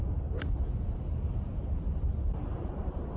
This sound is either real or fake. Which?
real